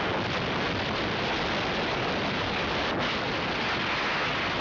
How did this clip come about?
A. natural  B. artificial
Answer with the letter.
A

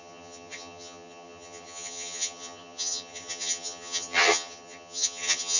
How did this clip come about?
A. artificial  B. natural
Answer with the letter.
A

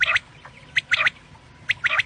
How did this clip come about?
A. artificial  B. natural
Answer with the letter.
B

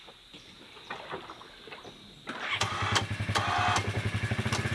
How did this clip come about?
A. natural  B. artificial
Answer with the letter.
A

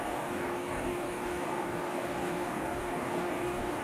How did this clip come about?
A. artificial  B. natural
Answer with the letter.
A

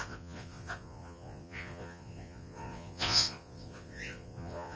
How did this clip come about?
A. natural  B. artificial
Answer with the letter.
B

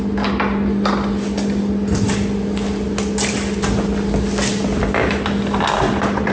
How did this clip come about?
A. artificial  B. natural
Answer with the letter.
B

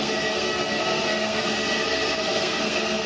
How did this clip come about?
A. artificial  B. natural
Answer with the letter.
A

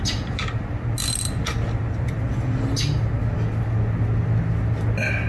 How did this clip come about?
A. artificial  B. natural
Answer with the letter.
B